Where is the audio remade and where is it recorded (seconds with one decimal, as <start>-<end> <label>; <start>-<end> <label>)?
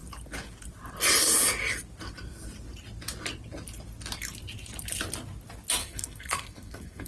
0.0-5.8 recorded; 5.8-7.1 remade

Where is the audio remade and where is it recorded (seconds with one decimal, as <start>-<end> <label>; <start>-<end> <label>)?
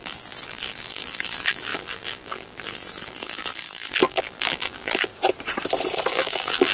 0.0-5.1 remade; 5.1-6.1 recorded; 6.1-6.7 remade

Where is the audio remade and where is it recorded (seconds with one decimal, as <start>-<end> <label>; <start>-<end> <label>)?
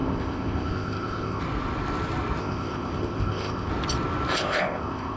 0.0-1.4 remade; 1.4-2.4 recorded; 2.4-3.7 remade; 3.7-4.3 recorded; 4.3-5.2 remade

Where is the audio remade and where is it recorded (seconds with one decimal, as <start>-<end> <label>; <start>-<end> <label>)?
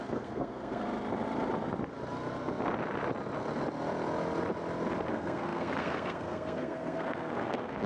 0.0-0.8 remade; 0.8-5.1 recorded; 5.1-7.9 remade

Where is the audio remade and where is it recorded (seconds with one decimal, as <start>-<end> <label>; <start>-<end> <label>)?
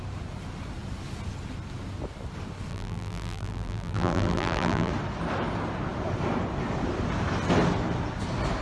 0.0-2.7 recorded; 2.7-4.9 remade; 4.9-8.6 recorded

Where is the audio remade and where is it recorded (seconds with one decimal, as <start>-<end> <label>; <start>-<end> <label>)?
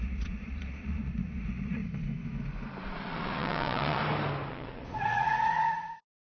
0.0-1.8 remade; 1.8-2.8 recorded; 2.8-4.0 remade; 4.0-4.5 recorded; 4.5-6.2 remade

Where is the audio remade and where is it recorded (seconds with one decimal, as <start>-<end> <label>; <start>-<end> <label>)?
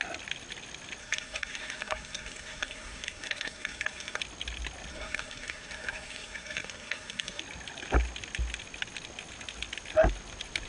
0.0-1.0 recorded; 1.0-4.2 remade; 4.2-4.9 recorded; 4.9-7.4 remade; 7.4-10.7 recorded